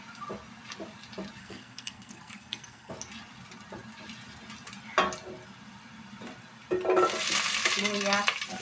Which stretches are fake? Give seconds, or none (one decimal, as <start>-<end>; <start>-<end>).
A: 1.4-2.9